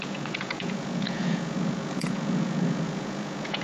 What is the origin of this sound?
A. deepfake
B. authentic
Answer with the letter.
A